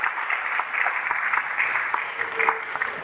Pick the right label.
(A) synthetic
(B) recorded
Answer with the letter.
A